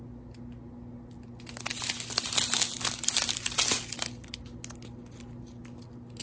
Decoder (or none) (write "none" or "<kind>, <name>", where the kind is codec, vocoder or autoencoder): none